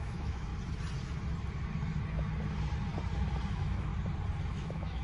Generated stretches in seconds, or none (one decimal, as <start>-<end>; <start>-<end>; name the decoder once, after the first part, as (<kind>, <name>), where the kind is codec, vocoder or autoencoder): 0.0-0.5 (autoencoder, DAC-VAE); 3.5-3.9; 4.5-5.0